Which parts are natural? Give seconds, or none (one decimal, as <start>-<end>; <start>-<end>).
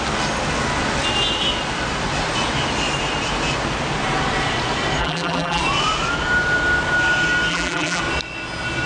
0.0-5.0; 5.6-7.5; 8.0-8.9